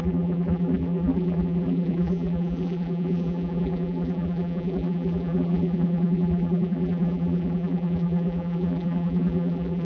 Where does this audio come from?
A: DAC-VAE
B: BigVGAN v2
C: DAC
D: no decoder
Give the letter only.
B